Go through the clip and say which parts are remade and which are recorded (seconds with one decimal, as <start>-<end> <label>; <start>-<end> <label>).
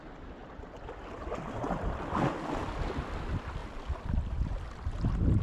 0.0-5.4 recorded